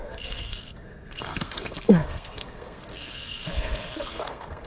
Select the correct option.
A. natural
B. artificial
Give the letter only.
B